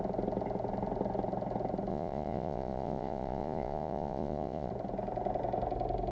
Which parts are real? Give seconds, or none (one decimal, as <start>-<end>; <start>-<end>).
0.0-1.9; 4.7-6.1